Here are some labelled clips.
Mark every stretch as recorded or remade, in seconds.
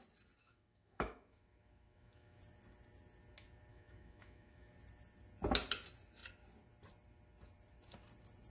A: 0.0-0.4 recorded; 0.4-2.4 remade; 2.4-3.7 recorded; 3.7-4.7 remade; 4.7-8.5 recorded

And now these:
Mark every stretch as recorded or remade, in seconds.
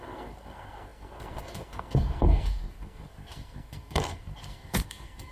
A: 0.0-5.3 remade